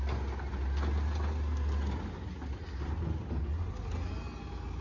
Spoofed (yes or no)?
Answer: no